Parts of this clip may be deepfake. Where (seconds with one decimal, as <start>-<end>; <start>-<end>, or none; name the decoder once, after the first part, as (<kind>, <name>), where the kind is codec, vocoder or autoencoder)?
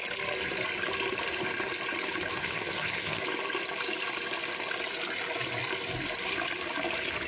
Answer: 2.4-3.2 (vocoder, HiFi-GAN)